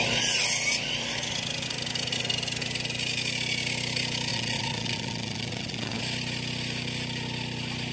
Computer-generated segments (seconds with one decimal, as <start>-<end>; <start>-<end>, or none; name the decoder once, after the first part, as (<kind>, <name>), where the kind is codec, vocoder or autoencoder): 4.3-6.0 (vocoder, Vocos)